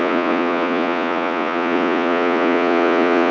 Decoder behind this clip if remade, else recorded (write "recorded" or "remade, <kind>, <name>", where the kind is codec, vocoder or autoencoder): remade, vocoder, Vocos